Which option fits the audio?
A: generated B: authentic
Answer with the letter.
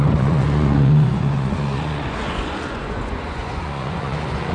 A